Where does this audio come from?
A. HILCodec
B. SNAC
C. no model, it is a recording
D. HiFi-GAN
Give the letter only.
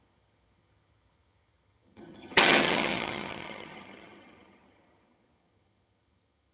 D